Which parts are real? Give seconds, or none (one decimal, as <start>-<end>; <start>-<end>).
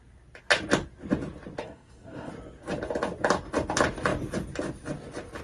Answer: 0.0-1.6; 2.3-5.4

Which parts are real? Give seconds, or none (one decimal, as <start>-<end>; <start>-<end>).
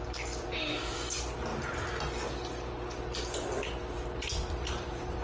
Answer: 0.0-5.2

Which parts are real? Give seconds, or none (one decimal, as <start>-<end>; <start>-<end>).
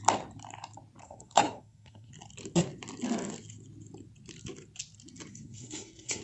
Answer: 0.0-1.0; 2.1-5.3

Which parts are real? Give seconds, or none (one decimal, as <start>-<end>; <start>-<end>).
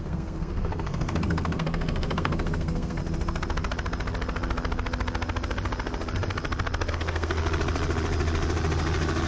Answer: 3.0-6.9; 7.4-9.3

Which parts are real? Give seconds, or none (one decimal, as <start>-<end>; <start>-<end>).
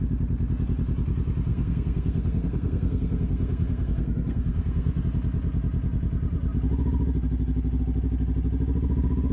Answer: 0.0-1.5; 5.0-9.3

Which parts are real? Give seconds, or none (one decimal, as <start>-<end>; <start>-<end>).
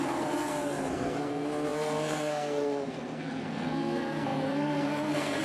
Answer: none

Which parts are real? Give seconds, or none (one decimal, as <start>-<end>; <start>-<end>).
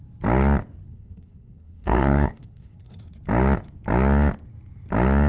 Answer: 0.0-0.9; 3.0-5.3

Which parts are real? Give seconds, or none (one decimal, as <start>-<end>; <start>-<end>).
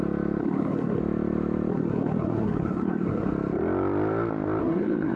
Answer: 0.0-0.4; 1.0-1.7; 3.3-4.6